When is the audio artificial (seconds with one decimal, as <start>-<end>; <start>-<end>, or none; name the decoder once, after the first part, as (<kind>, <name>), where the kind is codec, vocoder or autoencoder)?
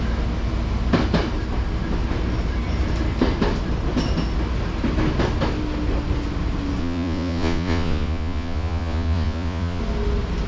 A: 6.8-9.8 (vocoder, Vocos)